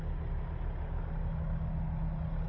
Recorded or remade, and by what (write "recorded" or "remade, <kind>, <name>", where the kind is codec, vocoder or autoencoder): recorded